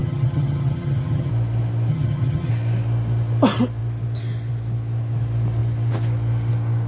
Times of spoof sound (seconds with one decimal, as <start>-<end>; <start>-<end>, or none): 0.0-1.3; 1.9-2.5